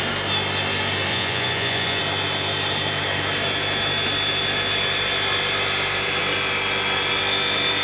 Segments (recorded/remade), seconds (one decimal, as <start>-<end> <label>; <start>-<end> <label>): 0.0-1.1 recorded; 1.1-2.0 remade; 2.0-7.8 recorded